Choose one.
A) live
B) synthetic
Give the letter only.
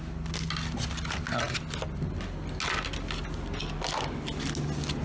A